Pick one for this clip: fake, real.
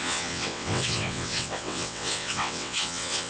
fake